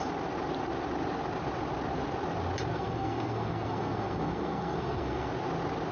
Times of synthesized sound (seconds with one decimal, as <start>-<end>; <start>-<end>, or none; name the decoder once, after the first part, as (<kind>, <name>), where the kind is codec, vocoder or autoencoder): 2.7-5.3 (codec, SNAC)